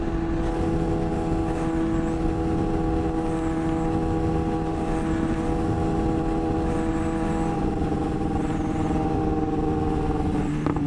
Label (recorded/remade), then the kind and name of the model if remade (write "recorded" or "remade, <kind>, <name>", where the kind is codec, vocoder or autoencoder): recorded